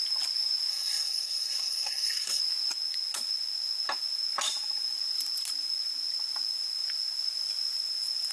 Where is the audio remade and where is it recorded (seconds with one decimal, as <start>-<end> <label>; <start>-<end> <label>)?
0.0-0.7 recorded; 0.7-2.4 remade; 2.4-8.3 recorded